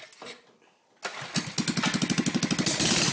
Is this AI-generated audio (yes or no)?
no